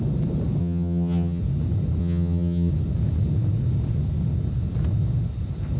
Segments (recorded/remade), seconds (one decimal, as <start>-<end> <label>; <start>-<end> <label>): 0.0-0.6 recorded; 0.6-1.4 remade; 1.4-2.0 recorded; 2.0-2.7 remade; 2.7-5.8 recorded